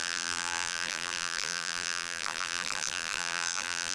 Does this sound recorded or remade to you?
remade